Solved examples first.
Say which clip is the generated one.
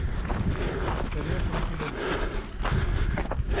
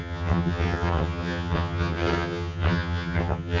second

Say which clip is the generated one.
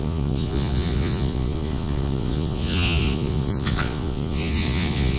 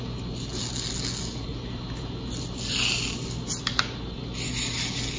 first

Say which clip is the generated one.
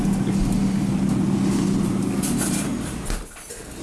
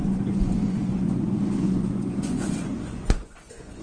second